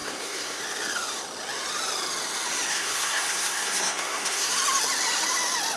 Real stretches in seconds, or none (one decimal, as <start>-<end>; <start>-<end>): 0.6-2.7; 4.5-5.8